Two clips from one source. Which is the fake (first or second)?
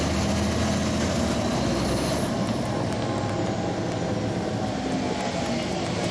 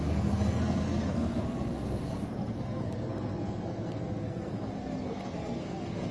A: second